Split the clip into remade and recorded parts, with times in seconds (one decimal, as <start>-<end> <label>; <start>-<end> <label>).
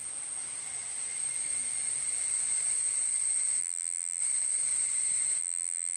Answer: 0.0-3.6 recorded; 3.6-4.2 remade; 4.2-5.4 recorded; 5.4-6.0 remade